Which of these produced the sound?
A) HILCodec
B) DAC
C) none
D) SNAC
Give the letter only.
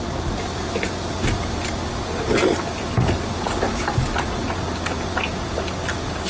C